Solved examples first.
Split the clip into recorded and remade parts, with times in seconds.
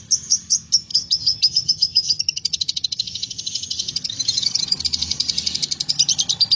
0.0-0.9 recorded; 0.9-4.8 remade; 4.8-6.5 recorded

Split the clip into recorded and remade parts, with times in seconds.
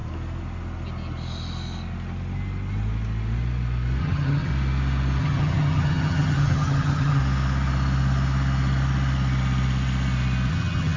0.0-4.0 recorded; 4.0-4.5 remade; 4.5-5.2 recorded; 5.2-7.2 remade; 7.2-10.5 recorded; 10.5-11.0 remade